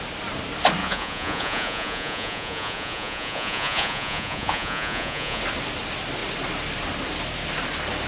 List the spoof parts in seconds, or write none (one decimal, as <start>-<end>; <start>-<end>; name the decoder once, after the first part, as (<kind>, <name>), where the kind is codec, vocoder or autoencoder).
0.8-5.4 (vocoder, Vocos)